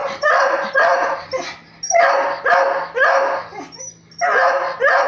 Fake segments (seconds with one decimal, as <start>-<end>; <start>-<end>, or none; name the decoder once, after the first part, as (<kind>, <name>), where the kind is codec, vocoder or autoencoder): 0.0-1.4 (vocoder, BigVGAN v2)